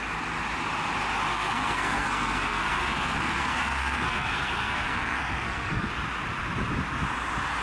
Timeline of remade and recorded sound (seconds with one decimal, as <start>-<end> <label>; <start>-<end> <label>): 0.0-1.3 recorded; 1.3-5.9 remade; 5.9-7.6 recorded